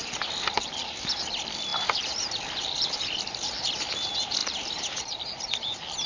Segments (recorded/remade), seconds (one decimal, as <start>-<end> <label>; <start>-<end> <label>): 0.0-6.1 remade